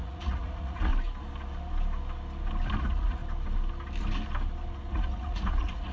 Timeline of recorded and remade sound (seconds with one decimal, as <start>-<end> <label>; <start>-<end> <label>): 0.0-0.9 remade; 0.9-2.8 recorded; 2.8-3.2 remade; 3.2-4.9 recorded; 4.9-5.9 remade